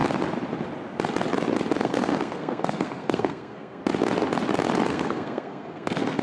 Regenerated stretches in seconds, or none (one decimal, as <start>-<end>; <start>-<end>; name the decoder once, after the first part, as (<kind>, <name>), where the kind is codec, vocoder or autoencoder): 1.8-3.8 (codec, SNAC); 4.9-6.2